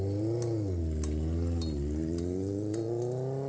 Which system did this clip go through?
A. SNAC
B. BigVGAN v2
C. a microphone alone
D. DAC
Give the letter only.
C